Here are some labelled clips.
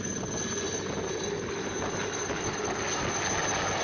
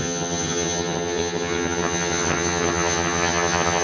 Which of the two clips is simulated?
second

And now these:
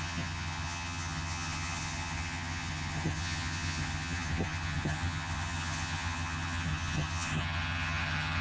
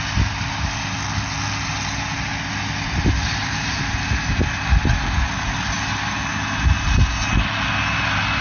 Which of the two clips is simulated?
first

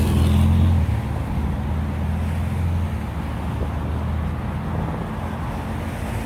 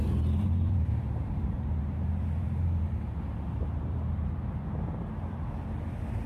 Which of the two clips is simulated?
second